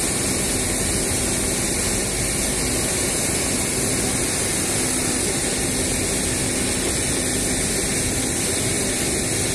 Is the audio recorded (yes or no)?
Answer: yes